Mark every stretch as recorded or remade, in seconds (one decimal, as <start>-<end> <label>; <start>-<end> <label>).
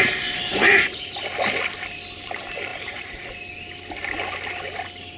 0.0-0.5 recorded; 0.5-1.2 remade; 1.2-2.7 recorded; 2.7-3.3 remade; 3.3-5.2 recorded